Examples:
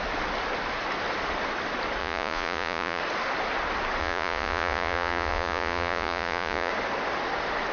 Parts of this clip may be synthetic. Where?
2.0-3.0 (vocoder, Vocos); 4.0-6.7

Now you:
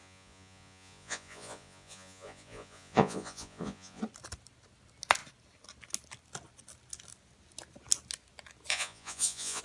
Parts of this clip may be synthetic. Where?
0.0-4.0 (vocoder, Vocos); 8.7-9.6